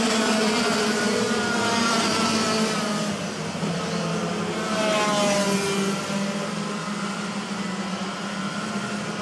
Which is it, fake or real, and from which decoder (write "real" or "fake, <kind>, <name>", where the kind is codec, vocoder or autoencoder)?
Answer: real